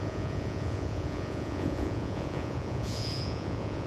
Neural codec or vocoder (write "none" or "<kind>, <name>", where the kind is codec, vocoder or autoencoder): vocoder, Vocos